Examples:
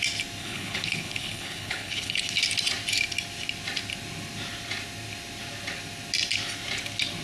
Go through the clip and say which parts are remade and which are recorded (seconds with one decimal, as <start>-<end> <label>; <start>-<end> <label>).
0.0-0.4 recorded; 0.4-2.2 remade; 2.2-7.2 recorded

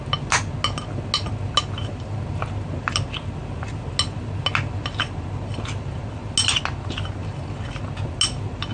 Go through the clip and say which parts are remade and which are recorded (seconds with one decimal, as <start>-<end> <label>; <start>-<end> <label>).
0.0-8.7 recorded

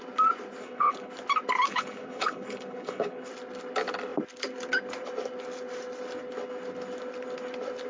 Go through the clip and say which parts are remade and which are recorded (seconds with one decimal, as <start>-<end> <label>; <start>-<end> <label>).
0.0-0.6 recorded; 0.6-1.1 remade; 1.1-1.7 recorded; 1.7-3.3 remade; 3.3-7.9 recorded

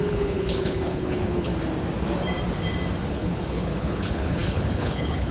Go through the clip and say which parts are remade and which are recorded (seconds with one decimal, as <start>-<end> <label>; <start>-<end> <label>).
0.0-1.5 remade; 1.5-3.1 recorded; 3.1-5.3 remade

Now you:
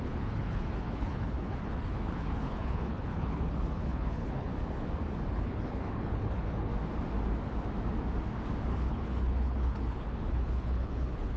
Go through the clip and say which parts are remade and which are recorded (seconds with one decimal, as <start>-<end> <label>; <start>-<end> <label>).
0.0-4.5 remade; 4.5-5.3 recorded; 5.3-6.7 remade; 6.7-8.7 recorded; 8.7-11.4 remade